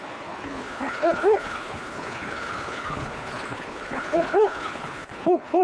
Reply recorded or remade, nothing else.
remade